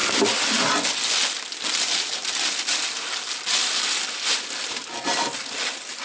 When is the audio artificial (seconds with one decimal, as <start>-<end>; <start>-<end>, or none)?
none